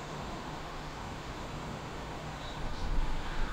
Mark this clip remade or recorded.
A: remade